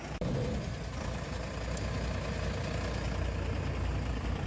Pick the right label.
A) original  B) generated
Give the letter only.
A